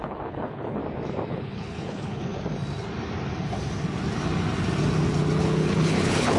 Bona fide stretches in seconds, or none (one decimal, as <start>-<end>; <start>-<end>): 0.8-1.3; 2.3-5.4